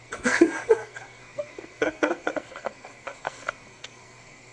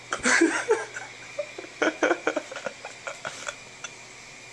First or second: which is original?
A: second